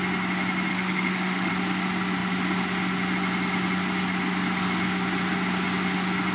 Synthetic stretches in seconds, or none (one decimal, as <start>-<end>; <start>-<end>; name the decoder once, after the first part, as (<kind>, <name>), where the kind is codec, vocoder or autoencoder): 0.7-1.5 (autoencoder, DAC-VAE)